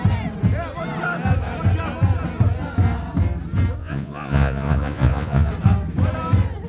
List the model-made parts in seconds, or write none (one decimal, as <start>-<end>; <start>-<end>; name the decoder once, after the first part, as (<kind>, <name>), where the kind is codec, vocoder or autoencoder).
3.8-5.5 (vocoder, Vocos)